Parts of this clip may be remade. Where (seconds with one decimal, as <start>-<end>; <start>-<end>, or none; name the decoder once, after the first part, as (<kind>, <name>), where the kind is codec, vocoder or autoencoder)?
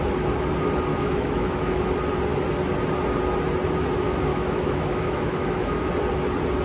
0.9-1.8 (autoencoder, DAC-VAE); 4.3-5.9